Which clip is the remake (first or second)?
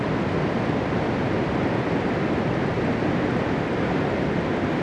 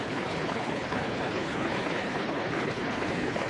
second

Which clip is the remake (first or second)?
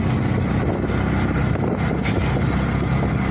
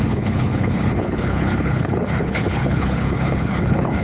second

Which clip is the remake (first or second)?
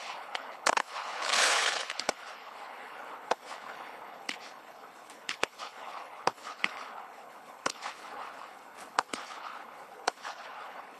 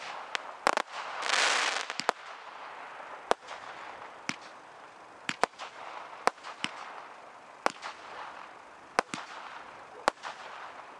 first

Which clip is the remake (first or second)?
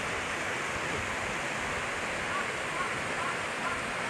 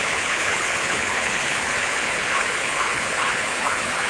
second